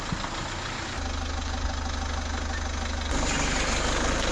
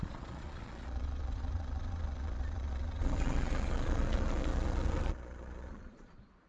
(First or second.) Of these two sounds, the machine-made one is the second